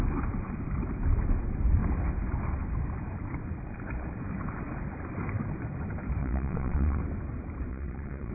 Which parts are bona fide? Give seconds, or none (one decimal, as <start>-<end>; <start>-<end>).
0.0-6.2; 7.0-7.7